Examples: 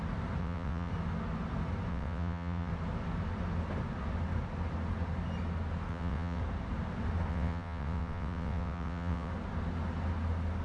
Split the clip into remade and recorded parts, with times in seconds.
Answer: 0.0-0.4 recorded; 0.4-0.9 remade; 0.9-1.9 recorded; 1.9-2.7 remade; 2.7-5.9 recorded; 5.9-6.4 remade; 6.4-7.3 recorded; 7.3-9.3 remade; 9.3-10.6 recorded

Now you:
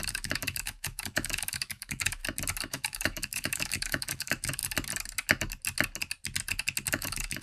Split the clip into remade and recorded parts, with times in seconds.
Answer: 0.0-2.2 remade; 2.2-2.7 recorded; 2.7-4.6 remade; 4.6-6.9 recorded; 6.9-7.4 remade